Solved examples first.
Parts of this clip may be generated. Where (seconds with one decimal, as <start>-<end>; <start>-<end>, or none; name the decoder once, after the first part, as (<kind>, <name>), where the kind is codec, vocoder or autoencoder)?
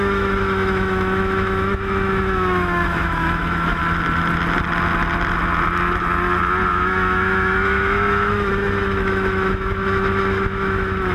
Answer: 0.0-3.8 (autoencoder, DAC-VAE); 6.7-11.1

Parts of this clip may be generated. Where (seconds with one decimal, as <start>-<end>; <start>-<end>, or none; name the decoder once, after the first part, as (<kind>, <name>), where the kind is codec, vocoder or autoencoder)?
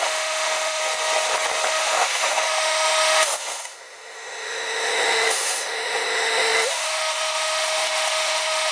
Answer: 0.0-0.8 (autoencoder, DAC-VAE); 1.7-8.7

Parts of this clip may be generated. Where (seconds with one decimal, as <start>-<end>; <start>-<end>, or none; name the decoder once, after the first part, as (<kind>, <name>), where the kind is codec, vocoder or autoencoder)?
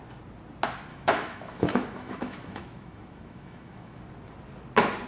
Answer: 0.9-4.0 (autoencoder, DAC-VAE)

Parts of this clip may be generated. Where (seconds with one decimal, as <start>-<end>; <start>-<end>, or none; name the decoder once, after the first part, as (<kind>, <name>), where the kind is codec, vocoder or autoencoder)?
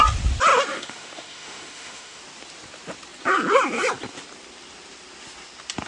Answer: 0.5-2.2 (autoencoder, DAC-VAE)